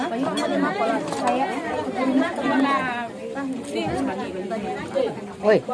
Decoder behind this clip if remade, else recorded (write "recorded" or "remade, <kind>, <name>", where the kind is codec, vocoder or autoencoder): recorded